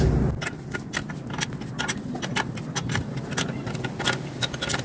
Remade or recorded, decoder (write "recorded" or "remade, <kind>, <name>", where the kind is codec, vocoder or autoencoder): recorded